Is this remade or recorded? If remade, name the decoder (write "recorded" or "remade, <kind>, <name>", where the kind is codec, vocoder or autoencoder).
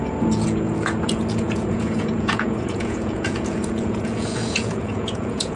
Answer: remade, vocoder, Vocos